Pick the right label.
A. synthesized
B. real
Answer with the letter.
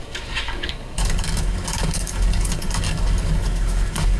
A